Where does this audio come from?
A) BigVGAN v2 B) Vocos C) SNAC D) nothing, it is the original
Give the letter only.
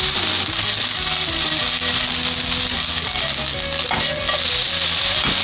D